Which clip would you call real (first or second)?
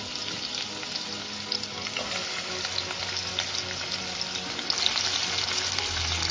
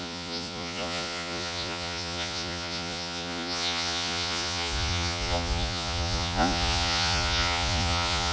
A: first